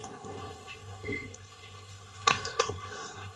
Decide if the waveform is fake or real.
fake